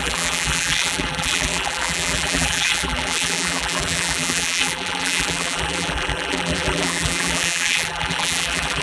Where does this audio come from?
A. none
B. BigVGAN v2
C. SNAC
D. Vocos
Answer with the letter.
B